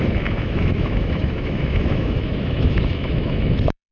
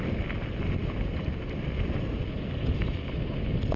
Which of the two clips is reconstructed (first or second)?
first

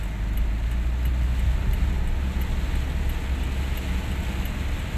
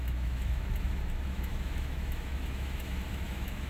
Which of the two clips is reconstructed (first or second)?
second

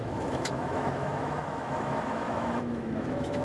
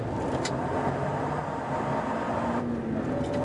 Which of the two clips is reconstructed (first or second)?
first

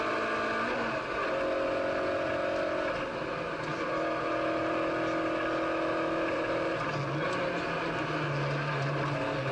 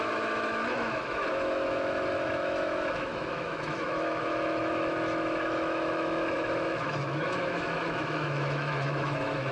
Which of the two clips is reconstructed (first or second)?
second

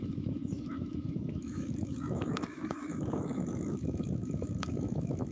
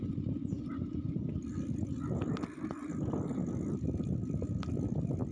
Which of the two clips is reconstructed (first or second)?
first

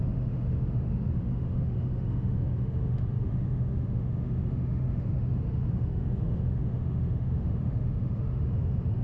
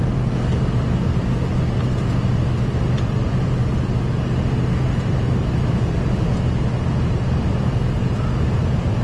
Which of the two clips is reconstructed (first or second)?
first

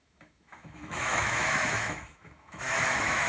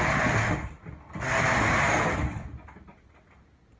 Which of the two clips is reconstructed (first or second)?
first